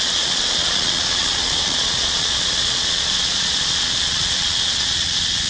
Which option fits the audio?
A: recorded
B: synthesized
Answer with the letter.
B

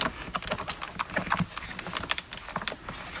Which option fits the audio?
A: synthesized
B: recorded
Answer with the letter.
B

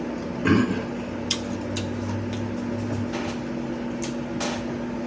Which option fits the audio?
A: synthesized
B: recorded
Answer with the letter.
B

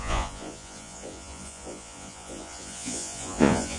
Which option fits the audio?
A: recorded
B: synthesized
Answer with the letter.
B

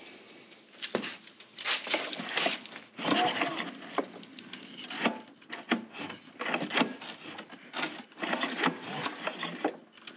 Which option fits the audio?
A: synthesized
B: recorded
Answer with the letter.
B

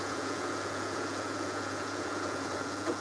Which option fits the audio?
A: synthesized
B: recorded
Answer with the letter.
A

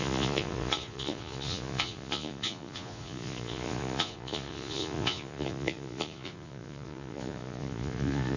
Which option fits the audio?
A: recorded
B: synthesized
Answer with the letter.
B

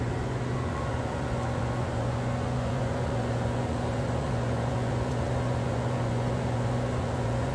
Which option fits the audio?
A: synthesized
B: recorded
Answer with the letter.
A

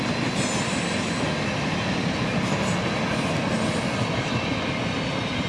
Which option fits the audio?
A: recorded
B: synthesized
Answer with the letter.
A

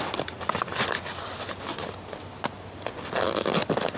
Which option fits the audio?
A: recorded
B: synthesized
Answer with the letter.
A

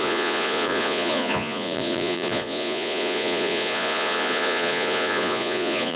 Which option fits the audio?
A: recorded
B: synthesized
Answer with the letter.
B